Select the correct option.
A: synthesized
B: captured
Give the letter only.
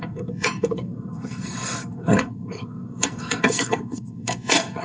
A